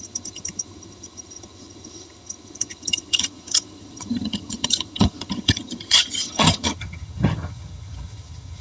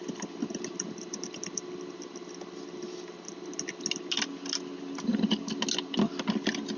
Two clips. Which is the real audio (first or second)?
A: second